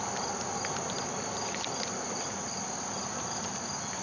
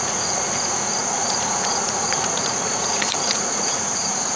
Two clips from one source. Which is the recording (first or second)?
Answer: first